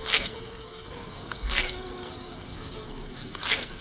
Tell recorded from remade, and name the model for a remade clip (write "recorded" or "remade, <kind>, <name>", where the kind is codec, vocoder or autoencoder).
remade, codec, SNAC